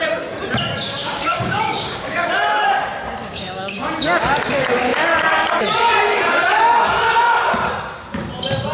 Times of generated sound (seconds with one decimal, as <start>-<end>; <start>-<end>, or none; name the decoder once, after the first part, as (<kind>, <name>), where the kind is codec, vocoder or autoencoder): 1.0-2.3 (codec, DAC); 3.2-3.8